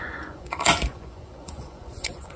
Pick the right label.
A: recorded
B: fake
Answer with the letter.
B